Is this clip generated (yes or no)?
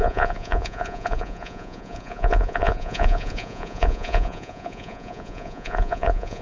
yes